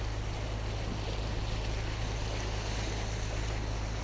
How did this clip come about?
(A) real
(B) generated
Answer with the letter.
A